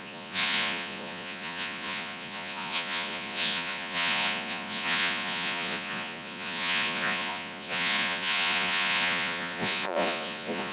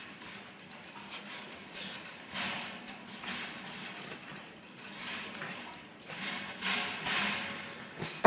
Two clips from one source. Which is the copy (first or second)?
first